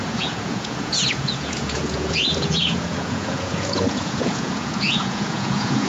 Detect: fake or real fake